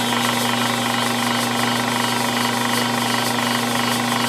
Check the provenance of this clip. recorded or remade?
recorded